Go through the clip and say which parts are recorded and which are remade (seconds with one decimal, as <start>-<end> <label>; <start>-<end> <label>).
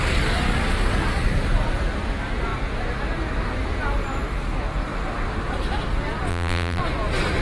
0.0-6.3 recorded; 6.3-6.8 remade; 6.8-7.4 recorded